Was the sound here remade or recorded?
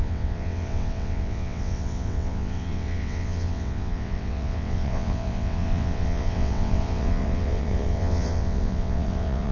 remade